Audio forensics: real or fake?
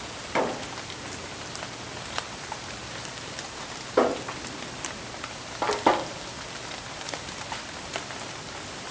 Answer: real